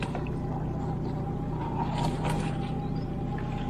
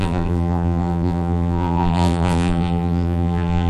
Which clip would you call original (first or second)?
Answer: first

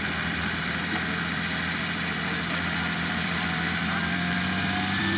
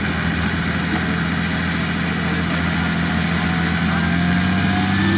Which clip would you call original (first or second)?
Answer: second